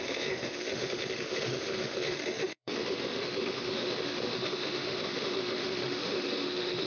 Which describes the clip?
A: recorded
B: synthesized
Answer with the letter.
B